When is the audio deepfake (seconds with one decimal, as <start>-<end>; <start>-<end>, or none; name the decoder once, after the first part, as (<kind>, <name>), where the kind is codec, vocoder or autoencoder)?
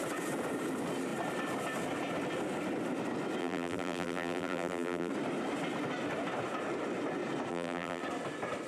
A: 3.4-5.1 (vocoder, BigVGAN v2); 7.5-8.0